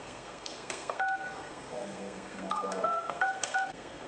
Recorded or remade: remade